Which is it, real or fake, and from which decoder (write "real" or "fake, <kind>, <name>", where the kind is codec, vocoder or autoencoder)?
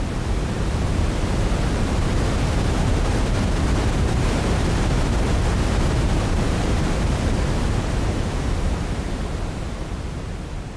fake, vocoder, BigVGAN v2